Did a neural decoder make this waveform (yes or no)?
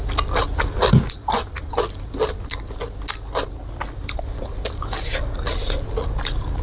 no